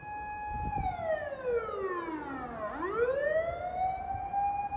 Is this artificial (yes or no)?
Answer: no